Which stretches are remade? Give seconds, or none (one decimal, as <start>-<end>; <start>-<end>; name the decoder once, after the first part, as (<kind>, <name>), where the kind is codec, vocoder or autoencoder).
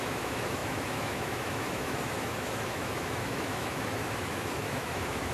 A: 0.0-5.3 (autoencoder, DAC-VAE)